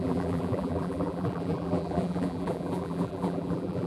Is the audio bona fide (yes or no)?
no